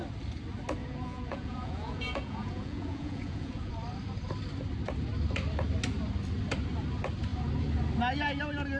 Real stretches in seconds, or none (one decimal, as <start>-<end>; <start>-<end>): 0.0-0.8; 3.7-8.8